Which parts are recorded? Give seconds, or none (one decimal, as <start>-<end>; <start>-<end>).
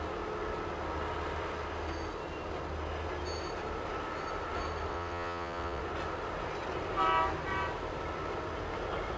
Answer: 0.0-4.9; 5.8-9.2